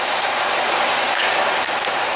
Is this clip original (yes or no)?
yes